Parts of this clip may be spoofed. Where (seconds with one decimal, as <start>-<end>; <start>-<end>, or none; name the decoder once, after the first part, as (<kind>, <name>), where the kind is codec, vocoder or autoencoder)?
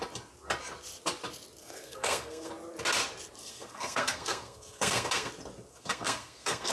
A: 1.6-2.5 (codec, SNAC); 3.4-5.3; 5.7-6.7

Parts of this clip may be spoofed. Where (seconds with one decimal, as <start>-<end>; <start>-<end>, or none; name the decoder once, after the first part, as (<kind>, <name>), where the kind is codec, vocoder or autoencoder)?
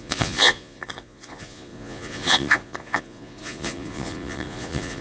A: 0.0-5.0 (vocoder, Vocos)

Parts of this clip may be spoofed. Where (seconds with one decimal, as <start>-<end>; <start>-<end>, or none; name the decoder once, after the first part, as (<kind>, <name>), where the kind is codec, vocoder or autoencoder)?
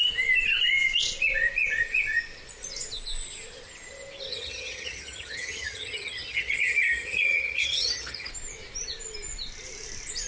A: 4.3-8.3 (vocoder, HiFi-GAN)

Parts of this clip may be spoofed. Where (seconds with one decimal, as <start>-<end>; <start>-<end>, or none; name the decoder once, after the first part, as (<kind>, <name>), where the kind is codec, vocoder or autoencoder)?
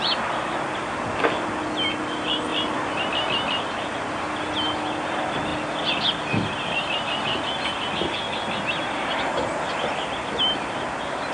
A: none